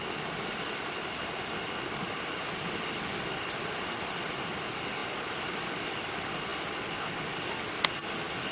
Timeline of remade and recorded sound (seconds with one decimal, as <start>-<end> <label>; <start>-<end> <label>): 0.0-8.5 recorded